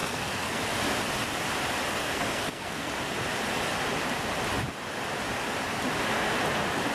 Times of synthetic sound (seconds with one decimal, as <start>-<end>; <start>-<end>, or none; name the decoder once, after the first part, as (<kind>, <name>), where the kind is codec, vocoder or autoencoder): 0.0-0.6 (codec, SNAC); 2.0-2.9